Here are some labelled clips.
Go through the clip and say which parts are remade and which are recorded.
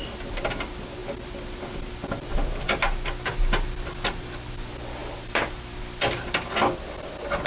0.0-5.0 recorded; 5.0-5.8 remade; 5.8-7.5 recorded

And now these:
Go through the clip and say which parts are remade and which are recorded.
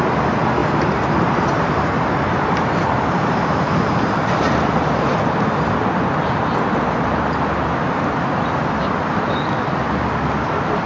0.0-0.6 recorded; 0.6-4.4 remade; 4.4-10.9 recorded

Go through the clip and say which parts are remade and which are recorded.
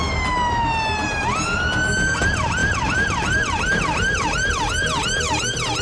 0.0-2.6 recorded; 2.6-5.0 remade; 5.0-5.8 recorded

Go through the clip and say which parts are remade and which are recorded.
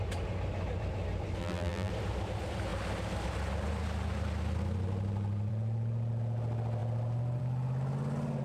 0.0-1.4 recorded; 1.4-1.9 remade; 1.9-8.4 recorded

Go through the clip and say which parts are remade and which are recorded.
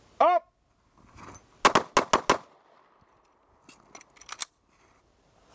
0.0-4.4 recorded; 4.4-5.5 remade